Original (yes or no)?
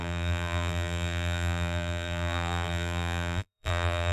no